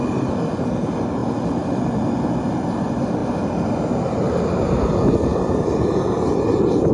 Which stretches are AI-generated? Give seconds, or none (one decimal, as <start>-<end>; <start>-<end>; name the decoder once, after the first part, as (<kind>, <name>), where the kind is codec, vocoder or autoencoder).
none